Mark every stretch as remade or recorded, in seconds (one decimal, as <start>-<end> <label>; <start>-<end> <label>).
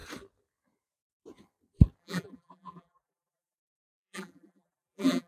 0.0-2.0 recorded; 2.0-5.3 remade